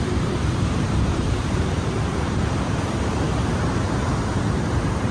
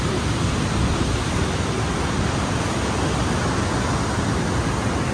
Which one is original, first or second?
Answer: second